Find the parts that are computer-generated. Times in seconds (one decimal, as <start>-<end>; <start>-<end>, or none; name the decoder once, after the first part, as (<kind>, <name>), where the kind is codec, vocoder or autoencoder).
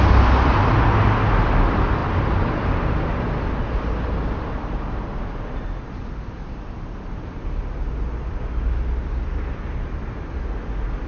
none